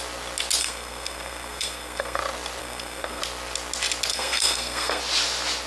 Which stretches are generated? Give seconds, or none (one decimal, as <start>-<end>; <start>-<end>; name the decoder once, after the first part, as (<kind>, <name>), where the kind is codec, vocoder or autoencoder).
0.6-2.2 (codec, SNAC); 2.6-3.2; 4.1-5.0